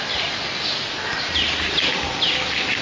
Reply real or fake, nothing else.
real